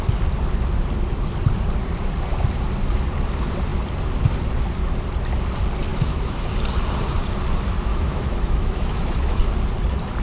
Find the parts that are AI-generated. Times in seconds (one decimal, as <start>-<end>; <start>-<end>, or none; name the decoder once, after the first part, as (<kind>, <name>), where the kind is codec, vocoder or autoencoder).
5.9-6.5 (autoencoder, DAC-VAE); 7.9-9.4